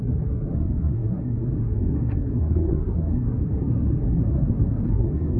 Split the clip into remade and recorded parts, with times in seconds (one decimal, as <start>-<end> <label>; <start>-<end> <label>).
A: 0.0-5.4 remade